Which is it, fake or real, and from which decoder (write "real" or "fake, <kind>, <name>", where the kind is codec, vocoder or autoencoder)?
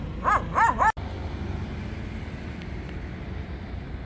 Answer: real